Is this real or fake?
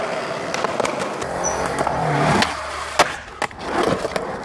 real